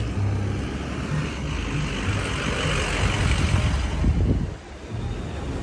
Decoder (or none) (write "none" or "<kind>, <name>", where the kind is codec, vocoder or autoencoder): none